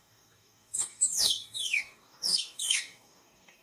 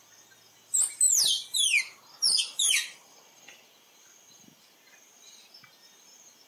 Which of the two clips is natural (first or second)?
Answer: second